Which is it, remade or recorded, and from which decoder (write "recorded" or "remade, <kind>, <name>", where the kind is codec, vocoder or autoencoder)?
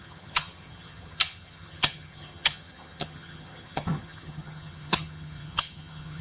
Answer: remade, vocoder, HiFi-GAN